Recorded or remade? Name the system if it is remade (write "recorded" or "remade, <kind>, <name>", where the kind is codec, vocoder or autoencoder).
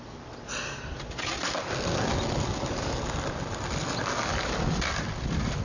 recorded